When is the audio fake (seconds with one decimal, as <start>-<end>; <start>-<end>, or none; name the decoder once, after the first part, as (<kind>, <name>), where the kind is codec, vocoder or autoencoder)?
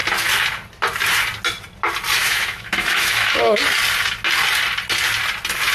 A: 2.2-3.6 (autoencoder, DAC-VAE)